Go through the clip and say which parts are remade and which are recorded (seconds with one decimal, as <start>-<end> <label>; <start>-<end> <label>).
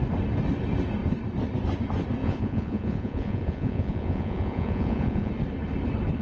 0.0-2.2 recorded; 2.2-5.3 remade; 5.3-6.2 recorded